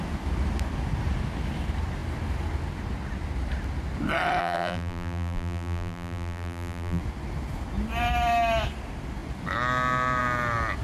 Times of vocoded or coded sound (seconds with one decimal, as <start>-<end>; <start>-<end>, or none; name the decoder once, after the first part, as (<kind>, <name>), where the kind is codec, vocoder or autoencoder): 4.4-7.0 (vocoder, BigVGAN v2)